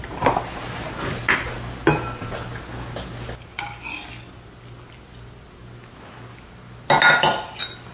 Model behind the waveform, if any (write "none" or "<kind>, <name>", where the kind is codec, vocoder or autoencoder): none